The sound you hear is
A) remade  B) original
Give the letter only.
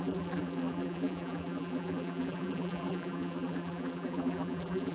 A